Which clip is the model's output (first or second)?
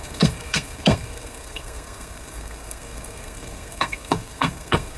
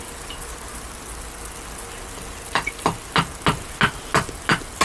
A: first